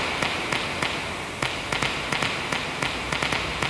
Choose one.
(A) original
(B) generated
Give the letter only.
A